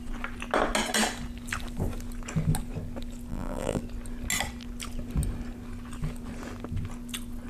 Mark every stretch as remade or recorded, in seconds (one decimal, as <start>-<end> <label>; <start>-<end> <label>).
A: 0.0-3.3 recorded; 3.3-3.8 remade; 3.8-7.5 recorded